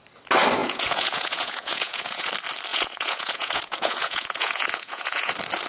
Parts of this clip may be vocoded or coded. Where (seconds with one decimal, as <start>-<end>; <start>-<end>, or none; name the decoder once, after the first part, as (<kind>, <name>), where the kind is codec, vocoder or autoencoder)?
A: 0.6-2.3 (vocoder, Vocos); 2.7-5.3